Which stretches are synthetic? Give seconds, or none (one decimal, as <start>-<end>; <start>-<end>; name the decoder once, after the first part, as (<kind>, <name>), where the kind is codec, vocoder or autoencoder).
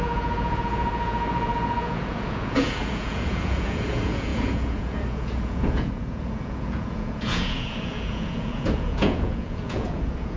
0.0-10.4 (vocoder, Vocos)